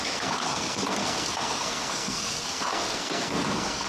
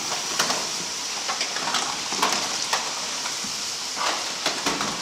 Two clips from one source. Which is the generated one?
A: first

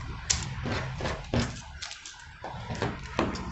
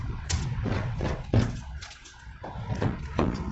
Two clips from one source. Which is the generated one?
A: second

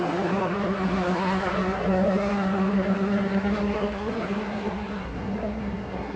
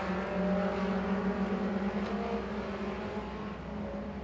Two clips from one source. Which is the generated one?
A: first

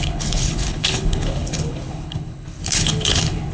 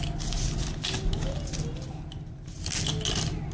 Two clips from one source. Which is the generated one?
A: first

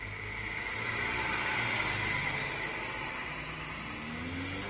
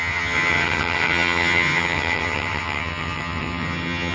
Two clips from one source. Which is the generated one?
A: second